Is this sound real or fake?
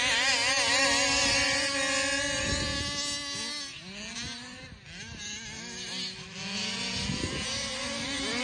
real